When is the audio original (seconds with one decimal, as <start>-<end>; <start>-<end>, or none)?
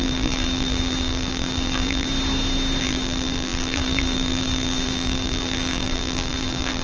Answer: 2.1-2.8